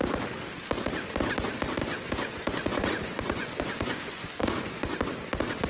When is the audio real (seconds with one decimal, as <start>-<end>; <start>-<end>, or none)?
0.0-1.8; 5.0-5.7

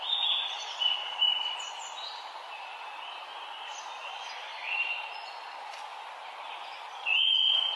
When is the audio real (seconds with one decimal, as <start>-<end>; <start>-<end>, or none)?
0.0-7.8

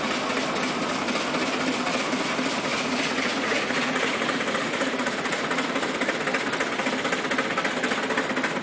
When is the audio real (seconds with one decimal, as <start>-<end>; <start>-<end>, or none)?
0.0-2.7; 5.7-8.6

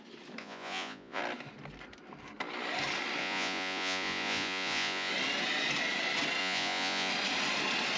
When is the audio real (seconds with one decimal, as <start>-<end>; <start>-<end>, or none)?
0.0-0.4; 1.2-3.2; 5.1-6.4; 7.1-8.0

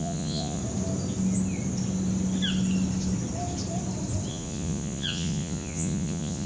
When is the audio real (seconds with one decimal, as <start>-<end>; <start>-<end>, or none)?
0.6-4.3

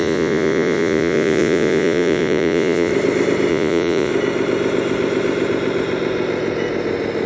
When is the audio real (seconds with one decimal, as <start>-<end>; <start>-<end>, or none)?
2.9-3.5; 4.1-7.3